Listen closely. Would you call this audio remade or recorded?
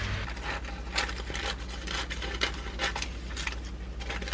recorded